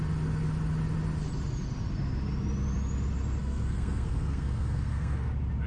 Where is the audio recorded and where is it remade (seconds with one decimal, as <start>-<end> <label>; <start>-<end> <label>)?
0.0-3.4 recorded; 3.4-5.3 remade; 5.3-5.7 recorded